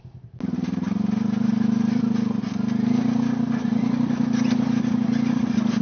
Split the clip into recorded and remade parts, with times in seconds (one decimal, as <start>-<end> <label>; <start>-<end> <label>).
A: 0.0-5.8 recorded